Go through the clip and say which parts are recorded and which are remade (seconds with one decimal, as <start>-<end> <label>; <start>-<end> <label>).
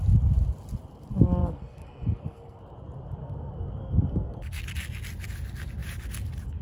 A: 0.0-1.4 recorded; 1.4-2.6 remade; 2.6-3.2 recorded; 3.2-4.6 remade; 4.6-6.6 recorded